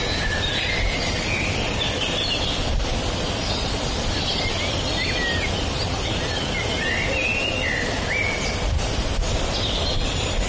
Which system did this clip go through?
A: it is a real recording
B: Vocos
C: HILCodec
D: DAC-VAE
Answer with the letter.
A